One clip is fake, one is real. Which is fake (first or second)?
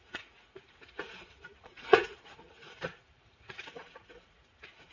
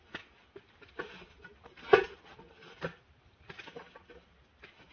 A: first